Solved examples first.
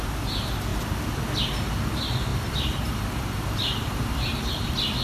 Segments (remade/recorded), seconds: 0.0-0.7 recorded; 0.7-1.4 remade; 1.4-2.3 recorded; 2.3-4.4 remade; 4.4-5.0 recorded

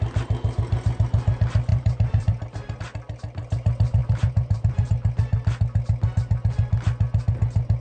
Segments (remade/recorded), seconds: 0.0-1.7 recorded; 1.7-2.8 remade; 2.8-4.0 recorded; 4.0-4.9 remade; 4.9-7.8 recorded

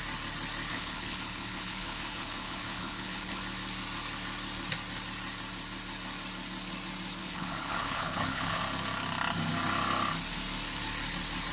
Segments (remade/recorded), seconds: 0.0-0.7 recorded; 0.7-3.4 remade; 3.4-7.2 recorded; 7.2-8.6 remade; 8.6-11.5 recorded

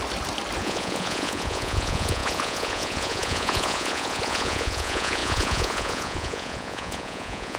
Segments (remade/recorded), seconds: 0.0-0.6 recorded; 0.6-7.6 remade